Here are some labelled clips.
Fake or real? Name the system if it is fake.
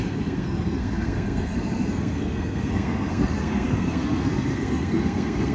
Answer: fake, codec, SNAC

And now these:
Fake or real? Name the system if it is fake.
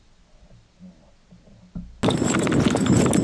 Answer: real